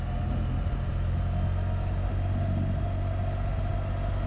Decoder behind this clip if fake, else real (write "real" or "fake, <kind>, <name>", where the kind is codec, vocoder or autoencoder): real